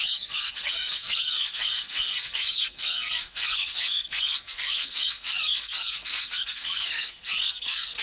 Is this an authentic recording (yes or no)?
no